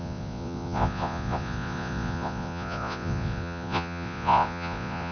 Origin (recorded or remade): remade